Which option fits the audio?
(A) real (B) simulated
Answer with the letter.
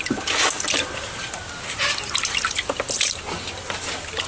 A